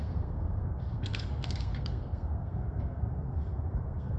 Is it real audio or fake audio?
fake